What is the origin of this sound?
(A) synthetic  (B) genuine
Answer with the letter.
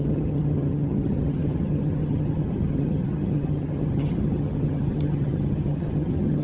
A